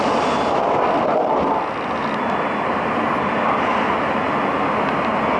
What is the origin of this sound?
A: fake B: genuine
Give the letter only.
B